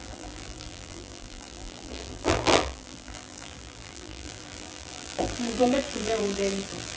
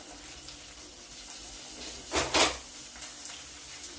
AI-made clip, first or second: first